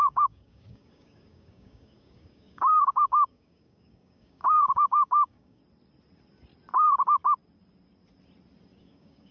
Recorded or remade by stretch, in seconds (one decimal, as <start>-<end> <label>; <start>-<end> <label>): 0.0-5.6 remade; 5.6-8.8 recorded; 8.8-9.3 remade